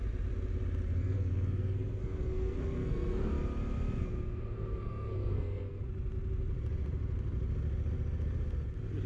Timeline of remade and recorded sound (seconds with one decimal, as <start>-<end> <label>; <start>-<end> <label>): 0.0-1.0 recorded; 1.0-3.3 remade; 3.3-4.0 recorded; 4.0-5.8 remade; 5.8-9.1 recorded

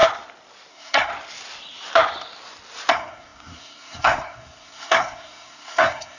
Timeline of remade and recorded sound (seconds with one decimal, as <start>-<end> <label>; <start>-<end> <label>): 0.0-0.7 recorded; 0.7-1.1 remade; 1.1-2.9 recorded; 2.9-6.2 remade

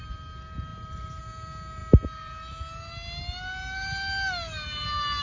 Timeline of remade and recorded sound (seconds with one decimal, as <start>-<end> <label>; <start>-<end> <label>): 0.0-0.7 recorded; 0.7-1.2 remade; 1.2-5.2 recorded

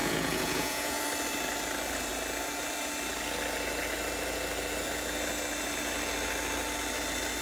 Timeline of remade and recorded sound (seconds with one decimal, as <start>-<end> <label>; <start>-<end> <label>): 0.0-1.0 remade; 1.0-7.4 recorded

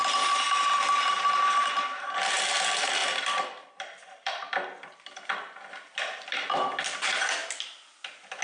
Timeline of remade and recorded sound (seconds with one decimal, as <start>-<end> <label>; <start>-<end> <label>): 0.0-3.0 recorded; 3.0-6.8 remade; 6.8-8.4 recorded